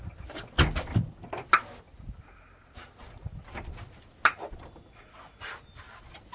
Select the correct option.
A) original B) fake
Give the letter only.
B